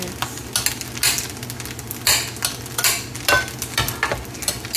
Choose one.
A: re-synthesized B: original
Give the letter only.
B